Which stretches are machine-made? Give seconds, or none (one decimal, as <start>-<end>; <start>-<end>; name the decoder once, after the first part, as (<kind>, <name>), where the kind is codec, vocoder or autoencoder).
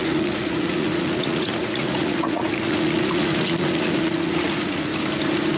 0.0-4.9 (vocoder, Vocos)